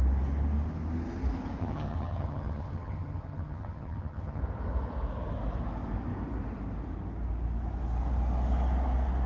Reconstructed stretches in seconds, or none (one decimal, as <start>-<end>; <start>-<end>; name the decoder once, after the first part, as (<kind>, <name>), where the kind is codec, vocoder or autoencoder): 1.6-4.4 (vocoder, HiFi-GAN)